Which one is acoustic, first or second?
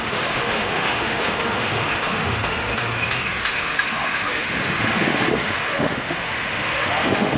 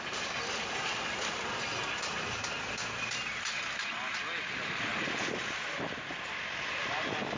second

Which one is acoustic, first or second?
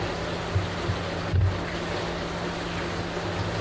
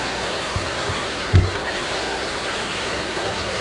first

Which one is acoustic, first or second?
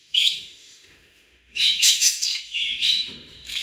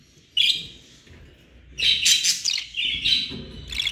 second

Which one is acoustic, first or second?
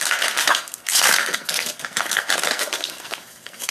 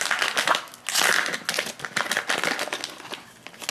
second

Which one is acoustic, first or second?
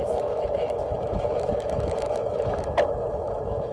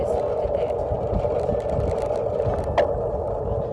second